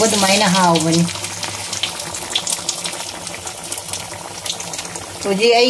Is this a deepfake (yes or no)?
no